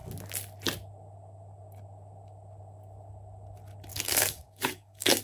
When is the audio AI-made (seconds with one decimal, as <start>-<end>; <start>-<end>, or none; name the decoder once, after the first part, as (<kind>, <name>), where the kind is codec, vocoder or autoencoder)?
3.9-5.2 (codec, DAC)